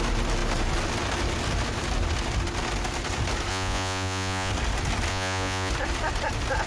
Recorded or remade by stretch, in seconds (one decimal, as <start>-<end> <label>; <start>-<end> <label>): 0.0-3.5 recorded; 3.5-4.5 remade; 4.5-5.1 recorded; 5.1-5.7 remade; 5.7-6.7 recorded